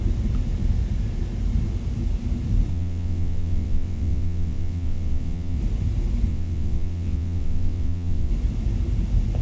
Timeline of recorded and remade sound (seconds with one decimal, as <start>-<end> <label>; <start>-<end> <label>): 0.0-2.7 recorded; 2.7-5.6 remade; 5.6-6.3 recorded; 6.3-8.3 remade; 8.3-9.4 recorded